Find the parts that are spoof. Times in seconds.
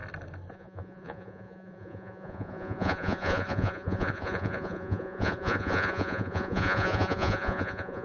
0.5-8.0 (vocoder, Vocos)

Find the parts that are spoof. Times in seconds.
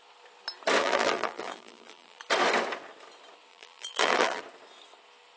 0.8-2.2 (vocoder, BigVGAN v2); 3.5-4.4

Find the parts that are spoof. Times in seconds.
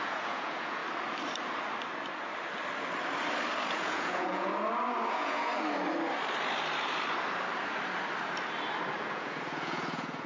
0.0-0.8 (vocoder, Vocos); 3.7-4.5; 5.1-5.5; 9.0-10.3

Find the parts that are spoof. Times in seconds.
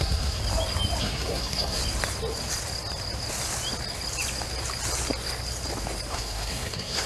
0.0-0.4 (codec, SNAC); 1.0-1.8; 6.1-7.1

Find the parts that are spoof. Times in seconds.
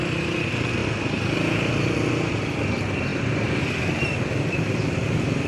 none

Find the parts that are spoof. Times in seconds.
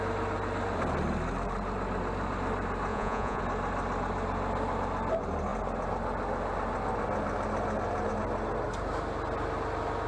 2.9-3.4 (vocoder, Vocos)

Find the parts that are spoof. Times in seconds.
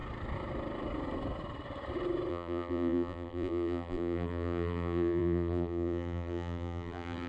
2.3-7.3 (vocoder, BigVGAN v2)